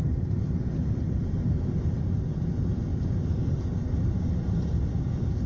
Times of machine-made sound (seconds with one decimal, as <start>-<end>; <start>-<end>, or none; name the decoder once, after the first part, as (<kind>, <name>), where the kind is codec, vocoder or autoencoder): none